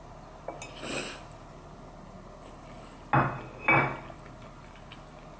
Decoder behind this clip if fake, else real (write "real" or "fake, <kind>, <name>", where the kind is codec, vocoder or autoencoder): real